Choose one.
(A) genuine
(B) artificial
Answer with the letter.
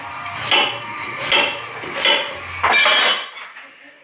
A